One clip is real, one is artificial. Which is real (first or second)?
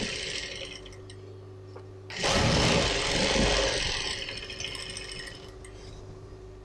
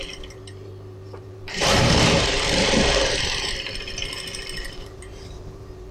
first